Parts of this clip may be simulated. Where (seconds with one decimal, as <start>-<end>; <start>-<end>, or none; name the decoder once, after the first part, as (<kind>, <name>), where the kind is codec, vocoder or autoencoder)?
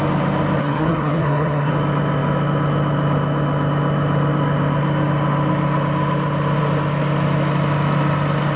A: 0.6-1.7 (codec, SNAC)